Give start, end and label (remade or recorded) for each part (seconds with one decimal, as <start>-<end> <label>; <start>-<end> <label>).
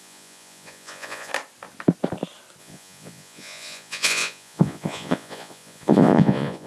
0.0-1.3 remade; 1.3-2.6 recorded; 2.6-6.7 remade